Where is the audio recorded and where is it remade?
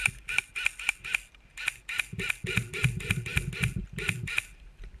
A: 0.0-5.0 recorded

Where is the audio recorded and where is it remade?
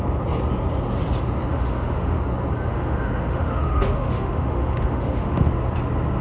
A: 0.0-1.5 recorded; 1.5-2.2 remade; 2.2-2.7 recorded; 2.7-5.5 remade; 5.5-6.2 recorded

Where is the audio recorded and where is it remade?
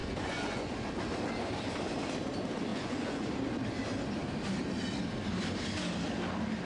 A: 0.0-0.7 remade; 0.7-2.7 recorded; 2.7-3.3 remade; 3.3-6.7 recorded